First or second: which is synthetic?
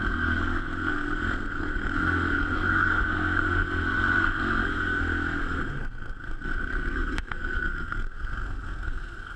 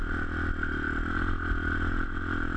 first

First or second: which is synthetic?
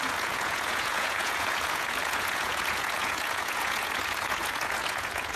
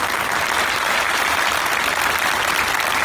first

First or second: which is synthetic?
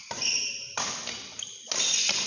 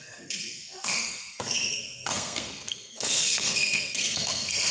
second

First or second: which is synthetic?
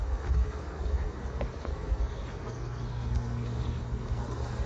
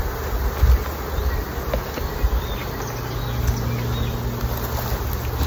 first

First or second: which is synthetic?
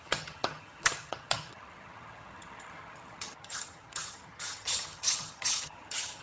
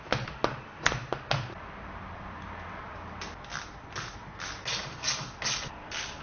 first